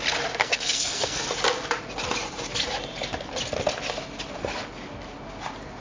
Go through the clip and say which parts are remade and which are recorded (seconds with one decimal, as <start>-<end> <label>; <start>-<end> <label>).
0.0-0.4 recorded; 0.4-1.2 remade; 1.2-5.8 recorded